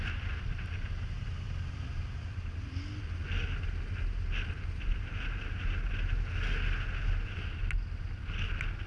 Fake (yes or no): no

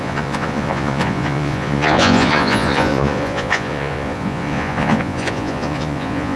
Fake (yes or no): yes